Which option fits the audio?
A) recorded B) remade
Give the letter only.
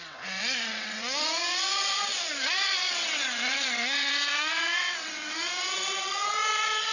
B